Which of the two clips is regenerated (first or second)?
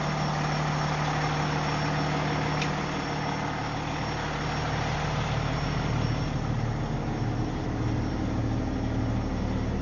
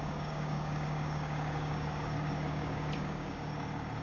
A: second